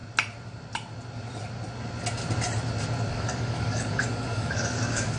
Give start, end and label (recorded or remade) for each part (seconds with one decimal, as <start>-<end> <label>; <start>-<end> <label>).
0.0-3.1 recorded; 3.1-5.2 remade